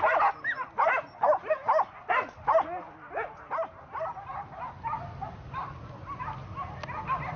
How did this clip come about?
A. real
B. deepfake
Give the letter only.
A